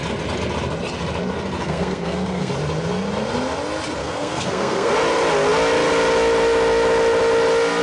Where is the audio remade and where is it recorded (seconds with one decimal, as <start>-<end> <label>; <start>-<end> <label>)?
0.0-1.6 recorded; 1.6-2.5 remade; 2.5-4.0 recorded; 4.0-4.9 remade; 4.9-7.8 recorded